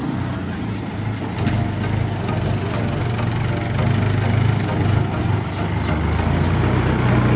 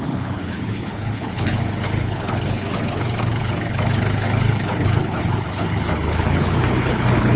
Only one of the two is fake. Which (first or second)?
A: second